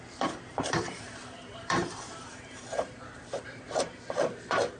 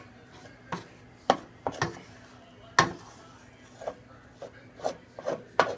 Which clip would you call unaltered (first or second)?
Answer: second